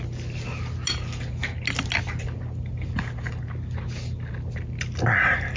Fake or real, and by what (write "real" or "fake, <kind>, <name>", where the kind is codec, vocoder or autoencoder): real